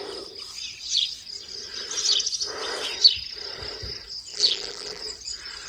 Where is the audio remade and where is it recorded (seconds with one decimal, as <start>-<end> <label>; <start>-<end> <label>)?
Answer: 0.0-4.3 recorded; 4.3-5.0 remade; 5.0-5.7 recorded